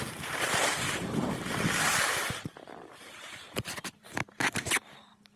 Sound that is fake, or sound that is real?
fake